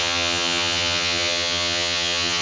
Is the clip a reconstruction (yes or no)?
yes